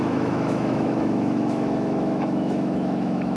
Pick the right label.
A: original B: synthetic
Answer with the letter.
B